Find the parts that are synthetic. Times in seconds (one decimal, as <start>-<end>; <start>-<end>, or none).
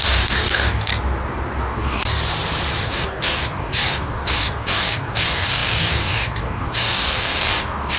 0.0-0.9; 1.6-2.2; 2.8-8.0